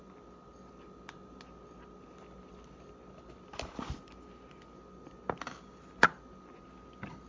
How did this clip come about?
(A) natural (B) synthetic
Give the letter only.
A